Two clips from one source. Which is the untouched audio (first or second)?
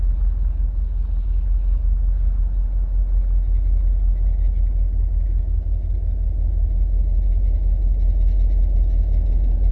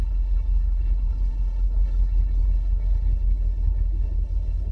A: first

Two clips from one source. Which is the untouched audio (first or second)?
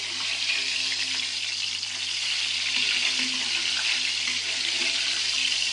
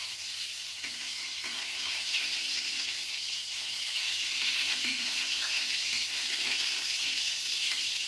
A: first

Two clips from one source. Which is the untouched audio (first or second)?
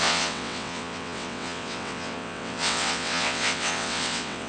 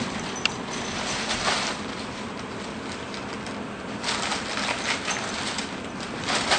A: second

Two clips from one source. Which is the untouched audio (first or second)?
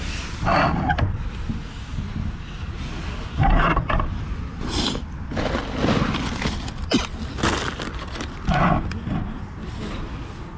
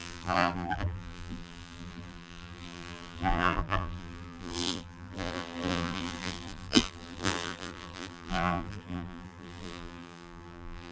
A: first